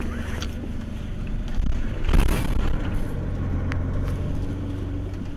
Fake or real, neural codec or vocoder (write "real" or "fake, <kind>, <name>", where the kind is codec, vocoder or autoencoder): real